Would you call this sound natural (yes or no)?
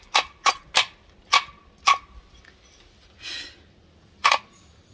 yes